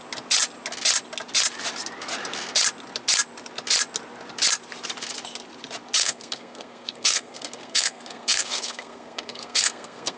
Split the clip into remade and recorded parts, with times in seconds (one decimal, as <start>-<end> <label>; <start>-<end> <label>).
0.0-6.0 recorded; 6.0-10.2 remade